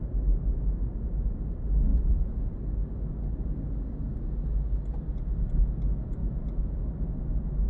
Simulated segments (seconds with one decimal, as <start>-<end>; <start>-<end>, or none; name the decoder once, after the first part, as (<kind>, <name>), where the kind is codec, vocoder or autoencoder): 1.9-2.5 (vocoder, Vocos); 6.2-6.8

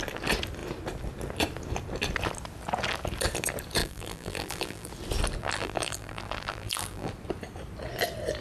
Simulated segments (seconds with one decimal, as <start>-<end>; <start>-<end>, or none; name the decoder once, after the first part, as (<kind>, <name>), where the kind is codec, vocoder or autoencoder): 3.8-4.9 (vocoder, BigVGAN v2); 5.4-7.1

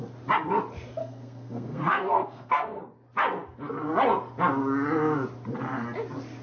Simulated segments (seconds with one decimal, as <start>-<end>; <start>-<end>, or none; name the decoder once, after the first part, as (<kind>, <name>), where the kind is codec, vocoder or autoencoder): 1.0-2.8 (codec, SNAC)

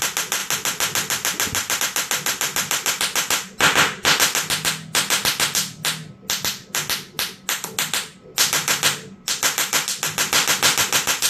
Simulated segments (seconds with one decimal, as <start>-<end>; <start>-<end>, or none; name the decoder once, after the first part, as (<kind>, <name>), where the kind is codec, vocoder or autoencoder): none

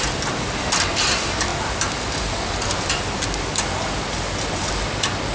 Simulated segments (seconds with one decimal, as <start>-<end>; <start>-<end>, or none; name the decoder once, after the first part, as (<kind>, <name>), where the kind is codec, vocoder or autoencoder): none

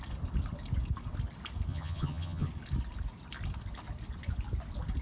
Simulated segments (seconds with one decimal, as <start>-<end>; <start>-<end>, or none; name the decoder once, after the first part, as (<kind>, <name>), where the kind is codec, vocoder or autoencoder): 1.7-2.5 (vocoder, HiFi-GAN)

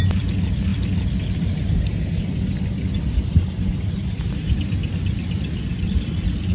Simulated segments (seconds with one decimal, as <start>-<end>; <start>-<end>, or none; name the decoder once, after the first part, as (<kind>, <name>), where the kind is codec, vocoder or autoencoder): none